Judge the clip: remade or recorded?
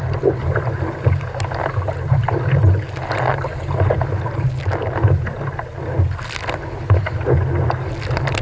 recorded